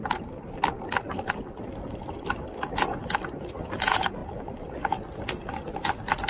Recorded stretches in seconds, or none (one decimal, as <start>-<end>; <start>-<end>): 0.0-3.8; 4.2-6.3